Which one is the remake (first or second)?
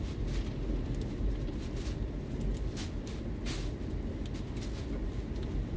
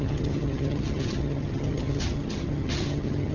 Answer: second